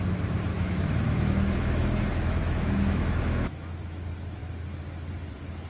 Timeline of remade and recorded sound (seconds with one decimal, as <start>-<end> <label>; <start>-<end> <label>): 0.0-0.5 recorded; 0.5-3.8 remade; 3.8-5.7 recorded